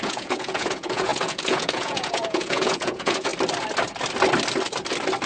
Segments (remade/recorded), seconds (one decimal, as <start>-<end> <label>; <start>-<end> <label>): 0.0-3.3 remade; 3.3-5.3 recorded

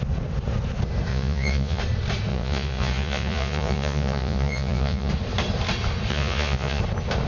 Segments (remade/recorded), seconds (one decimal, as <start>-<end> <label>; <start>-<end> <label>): 0.0-1.1 recorded; 1.1-1.8 remade; 1.8-2.3 recorded; 2.3-5.1 remade; 5.1-6.1 recorded; 6.1-6.8 remade; 6.8-7.3 recorded

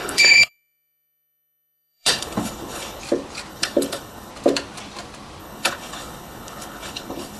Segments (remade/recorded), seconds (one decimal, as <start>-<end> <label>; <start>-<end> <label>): 0.0-3.0 remade; 3.0-3.5 recorded; 3.5-4.3 remade; 4.3-5.4 recorded; 5.4-7.4 remade